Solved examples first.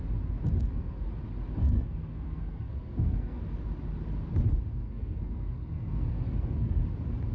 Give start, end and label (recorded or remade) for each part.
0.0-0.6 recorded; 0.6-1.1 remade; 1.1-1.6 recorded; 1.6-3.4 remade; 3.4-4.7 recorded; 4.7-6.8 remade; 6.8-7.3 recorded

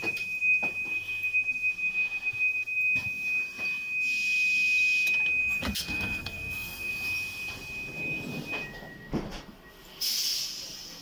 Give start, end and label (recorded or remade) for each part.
0.0-5.4 recorded; 5.4-6.9 remade; 6.9-11.0 recorded